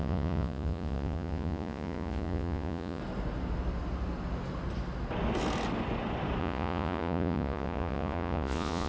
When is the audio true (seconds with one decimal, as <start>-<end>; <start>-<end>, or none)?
3.0-6.4